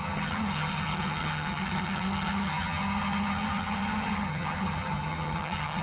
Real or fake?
fake